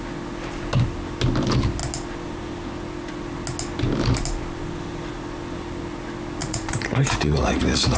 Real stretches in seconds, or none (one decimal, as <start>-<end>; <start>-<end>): 0.0-6.4